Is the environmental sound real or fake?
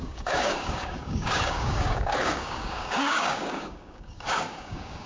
fake